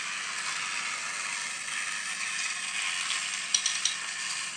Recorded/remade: recorded